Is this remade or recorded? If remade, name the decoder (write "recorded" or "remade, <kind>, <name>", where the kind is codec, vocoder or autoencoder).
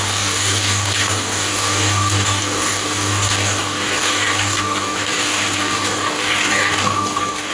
remade, codec, DAC